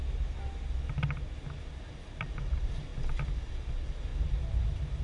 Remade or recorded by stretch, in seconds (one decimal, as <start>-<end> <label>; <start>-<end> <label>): 0.0-5.0 recorded